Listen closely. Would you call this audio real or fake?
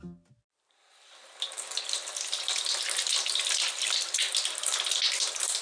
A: real